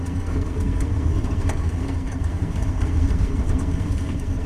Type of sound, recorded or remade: remade